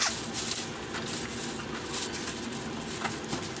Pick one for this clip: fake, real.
real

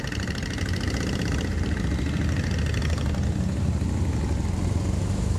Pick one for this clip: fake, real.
real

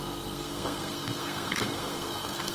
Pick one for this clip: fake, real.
fake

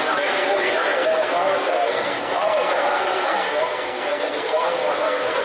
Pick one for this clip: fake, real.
fake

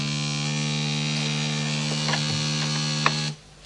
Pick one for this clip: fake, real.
real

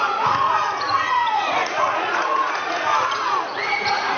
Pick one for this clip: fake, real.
fake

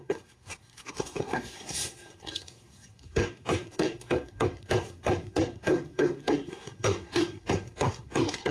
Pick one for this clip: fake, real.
fake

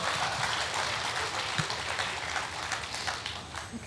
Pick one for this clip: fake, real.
real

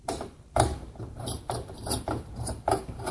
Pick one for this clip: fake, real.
fake